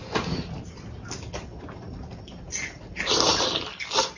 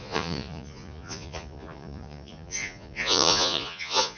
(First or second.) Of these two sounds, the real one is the first